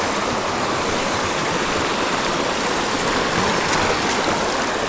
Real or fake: real